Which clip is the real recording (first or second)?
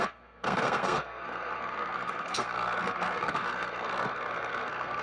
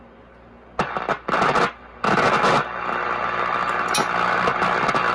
second